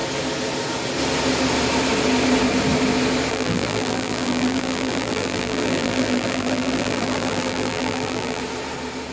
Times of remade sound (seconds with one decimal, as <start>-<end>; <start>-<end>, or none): 3.3-8.4